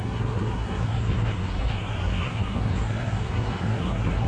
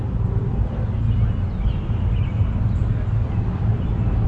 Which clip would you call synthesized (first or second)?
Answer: first